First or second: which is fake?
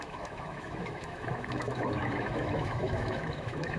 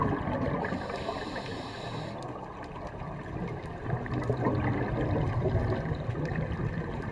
first